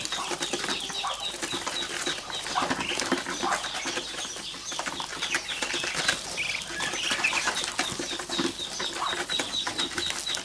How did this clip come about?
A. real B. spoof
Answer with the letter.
A